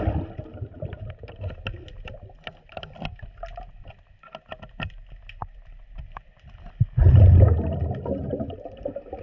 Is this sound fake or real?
real